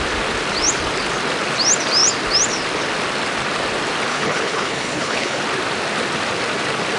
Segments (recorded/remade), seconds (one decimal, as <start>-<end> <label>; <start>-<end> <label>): 0.0-4.1 recorded; 4.1-5.4 remade; 5.4-7.0 recorded